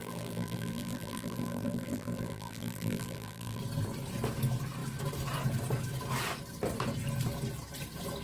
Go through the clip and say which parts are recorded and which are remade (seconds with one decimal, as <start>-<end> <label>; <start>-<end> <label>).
0.0-3.6 remade; 3.6-8.2 recorded